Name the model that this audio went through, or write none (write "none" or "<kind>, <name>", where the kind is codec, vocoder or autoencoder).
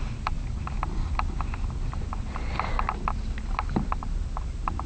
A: none